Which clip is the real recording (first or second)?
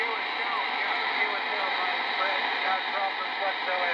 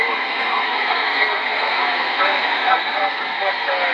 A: first